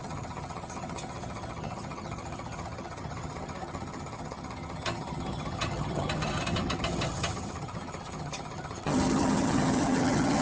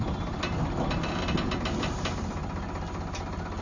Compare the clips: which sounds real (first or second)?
second